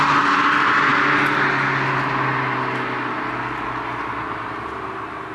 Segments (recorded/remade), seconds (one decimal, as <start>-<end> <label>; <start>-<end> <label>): 0.0-5.3 recorded